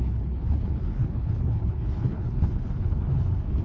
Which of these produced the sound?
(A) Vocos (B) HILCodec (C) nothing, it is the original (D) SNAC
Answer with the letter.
B